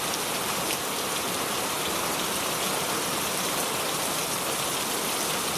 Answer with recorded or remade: remade